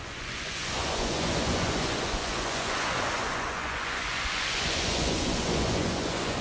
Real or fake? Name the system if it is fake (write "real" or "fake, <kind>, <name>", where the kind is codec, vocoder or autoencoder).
fake, vocoder, Vocos